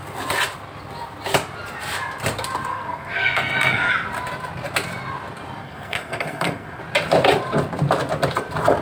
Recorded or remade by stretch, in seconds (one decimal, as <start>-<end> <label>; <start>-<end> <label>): 0.0-2.7 recorded; 2.7-3.9 remade; 3.9-5.6 recorded; 5.6-6.8 remade; 6.8-8.8 recorded